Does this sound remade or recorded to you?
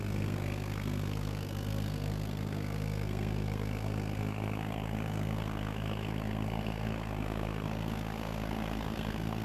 remade